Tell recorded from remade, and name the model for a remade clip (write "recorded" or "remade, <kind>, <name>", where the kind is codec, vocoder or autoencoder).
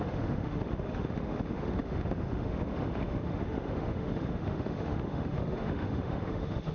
remade, autoencoder, DAC-VAE